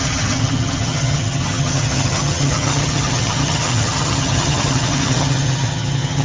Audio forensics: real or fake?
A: fake